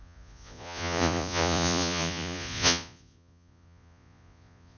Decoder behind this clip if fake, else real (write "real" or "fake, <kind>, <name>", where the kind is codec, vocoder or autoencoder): fake, vocoder, Vocos